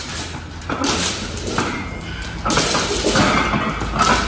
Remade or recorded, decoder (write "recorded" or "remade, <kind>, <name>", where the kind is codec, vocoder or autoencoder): recorded